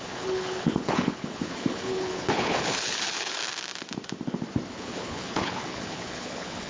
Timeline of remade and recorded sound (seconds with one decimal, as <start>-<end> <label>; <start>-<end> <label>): 0.0-3.4 remade; 3.4-4.7 recorded; 4.7-6.7 remade